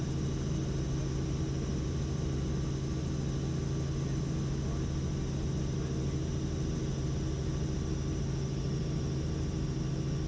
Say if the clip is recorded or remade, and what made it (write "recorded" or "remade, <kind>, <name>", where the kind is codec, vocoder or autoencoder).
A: recorded